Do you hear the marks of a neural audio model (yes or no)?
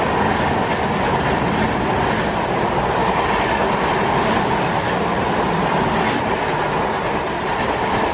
no